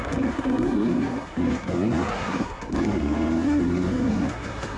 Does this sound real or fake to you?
fake